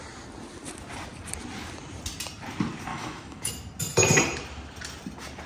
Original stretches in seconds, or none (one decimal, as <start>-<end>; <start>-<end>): 0.0-2.9; 3.5-5.5